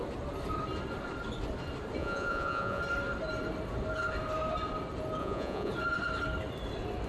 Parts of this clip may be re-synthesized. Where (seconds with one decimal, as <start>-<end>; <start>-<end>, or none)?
2.0-2.8; 5.2-5.7